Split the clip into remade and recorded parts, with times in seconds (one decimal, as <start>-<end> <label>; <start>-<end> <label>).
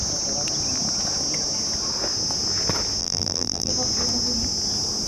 0.0-3.0 recorded; 3.0-3.7 remade; 3.7-5.1 recorded